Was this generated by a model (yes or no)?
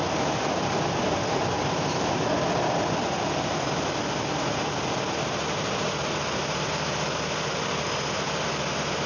no